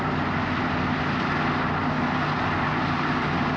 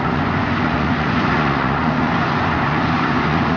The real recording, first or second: first